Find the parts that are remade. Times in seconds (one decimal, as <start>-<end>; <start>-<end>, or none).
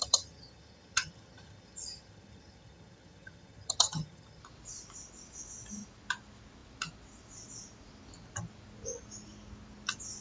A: 0.0-4.4